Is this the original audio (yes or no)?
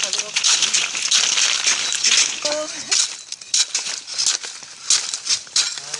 yes